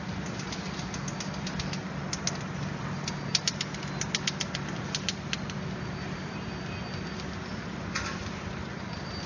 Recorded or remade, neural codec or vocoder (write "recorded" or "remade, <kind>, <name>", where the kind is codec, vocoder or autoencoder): recorded